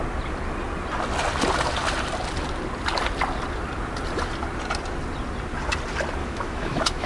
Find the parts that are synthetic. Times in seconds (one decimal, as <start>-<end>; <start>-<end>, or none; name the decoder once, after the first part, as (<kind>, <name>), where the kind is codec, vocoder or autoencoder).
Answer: 6.2-7.1 (autoencoder, DAC-VAE)